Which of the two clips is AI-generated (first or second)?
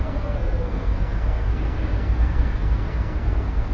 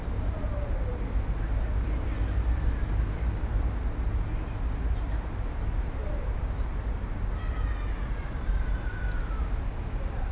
first